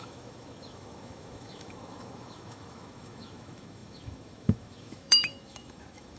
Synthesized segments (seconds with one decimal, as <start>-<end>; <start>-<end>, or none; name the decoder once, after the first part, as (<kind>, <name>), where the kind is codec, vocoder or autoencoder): 0.0-6.2 (autoencoder, DAC-VAE)